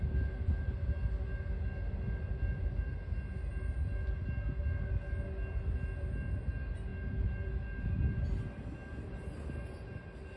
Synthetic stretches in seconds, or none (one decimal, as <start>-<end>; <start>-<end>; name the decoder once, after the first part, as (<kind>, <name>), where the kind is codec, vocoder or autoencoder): none